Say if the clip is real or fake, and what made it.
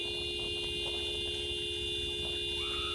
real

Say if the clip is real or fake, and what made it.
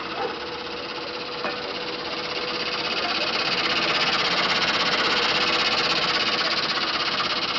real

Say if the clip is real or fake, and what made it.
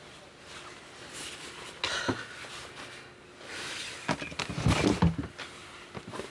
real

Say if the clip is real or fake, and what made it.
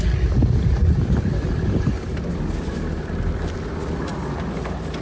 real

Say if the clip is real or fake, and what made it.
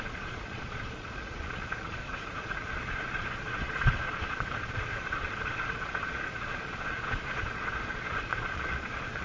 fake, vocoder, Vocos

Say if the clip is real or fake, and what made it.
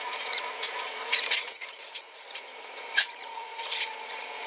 fake, vocoder, Vocos